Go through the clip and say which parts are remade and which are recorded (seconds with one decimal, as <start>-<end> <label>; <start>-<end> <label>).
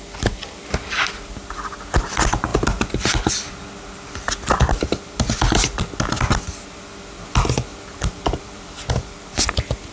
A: 0.0-7.7 recorded; 7.7-8.9 remade; 8.9-9.9 recorded